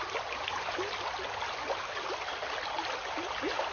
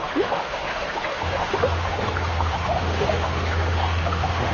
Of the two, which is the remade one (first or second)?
second